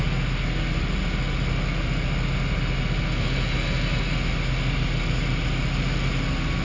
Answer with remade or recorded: recorded